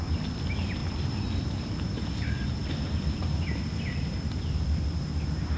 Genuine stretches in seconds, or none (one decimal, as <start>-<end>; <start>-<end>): 0.8-1.4